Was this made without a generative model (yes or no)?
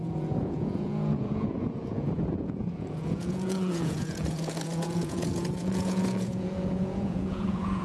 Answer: no